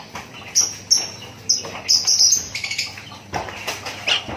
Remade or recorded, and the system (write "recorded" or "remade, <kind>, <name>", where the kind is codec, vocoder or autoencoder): recorded